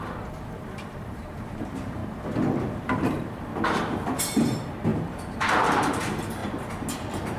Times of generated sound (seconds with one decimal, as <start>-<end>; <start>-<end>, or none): 0.0-2.0; 2.7-3.5; 4.2-6.4